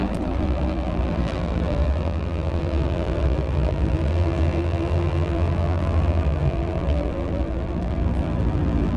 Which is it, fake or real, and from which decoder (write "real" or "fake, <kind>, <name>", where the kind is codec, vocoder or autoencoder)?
fake, vocoder, BigVGAN v2